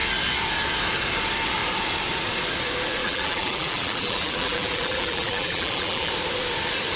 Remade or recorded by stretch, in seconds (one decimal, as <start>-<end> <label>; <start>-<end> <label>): 0.0-3.0 recorded; 3.0-6.1 remade; 6.1-7.0 recorded